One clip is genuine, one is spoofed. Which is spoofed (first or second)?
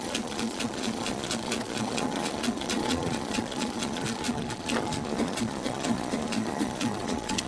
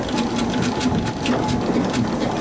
first